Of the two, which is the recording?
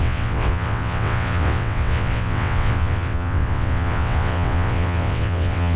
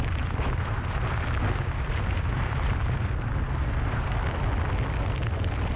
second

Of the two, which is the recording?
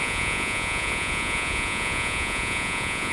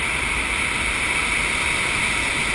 second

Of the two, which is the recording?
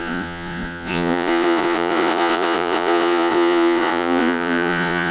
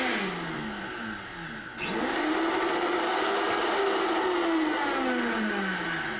second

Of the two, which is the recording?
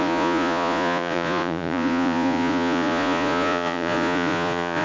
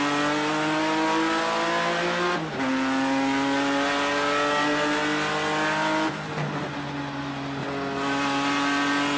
second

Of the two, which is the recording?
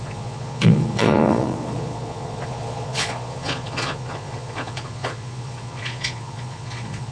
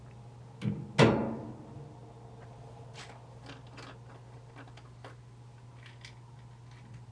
second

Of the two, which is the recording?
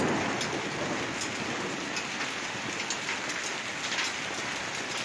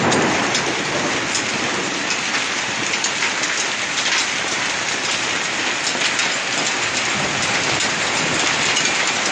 first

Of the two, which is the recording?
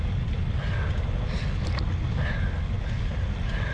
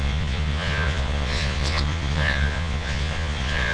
first